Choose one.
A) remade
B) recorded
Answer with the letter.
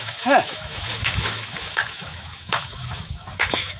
A